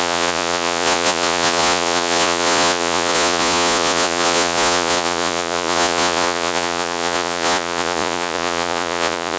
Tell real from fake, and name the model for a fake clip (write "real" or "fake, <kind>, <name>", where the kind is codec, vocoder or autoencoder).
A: fake, vocoder, Vocos